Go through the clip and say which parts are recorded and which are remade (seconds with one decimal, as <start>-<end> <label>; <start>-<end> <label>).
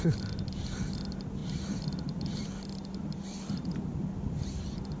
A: 0.0-5.0 recorded